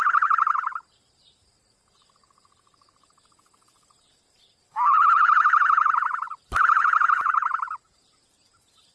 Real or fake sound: fake